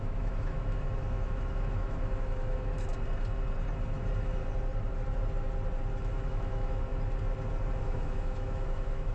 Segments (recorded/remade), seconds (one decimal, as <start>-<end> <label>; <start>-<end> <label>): 0.0-2.9 remade; 2.9-6.1 recorded; 6.1-6.9 remade; 6.9-7.8 recorded; 7.8-9.1 remade